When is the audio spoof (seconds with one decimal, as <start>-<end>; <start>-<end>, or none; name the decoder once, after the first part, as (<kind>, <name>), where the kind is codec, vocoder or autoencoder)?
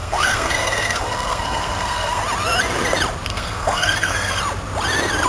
0.0-2.2 (codec, SNAC); 3.3-4.4